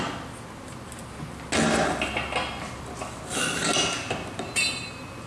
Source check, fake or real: real